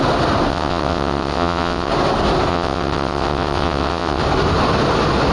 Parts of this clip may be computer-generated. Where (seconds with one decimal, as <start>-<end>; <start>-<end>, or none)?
0.5-1.9; 2.5-4.2